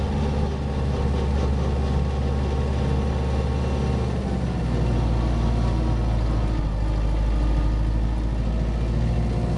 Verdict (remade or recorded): recorded